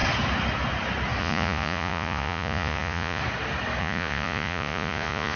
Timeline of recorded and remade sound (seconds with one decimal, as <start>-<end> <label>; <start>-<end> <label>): 0.0-1.2 recorded; 1.2-3.2 remade; 3.2-3.8 recorded; 3.8-5.4 remade